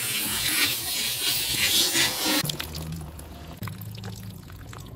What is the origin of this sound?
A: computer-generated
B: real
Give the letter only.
A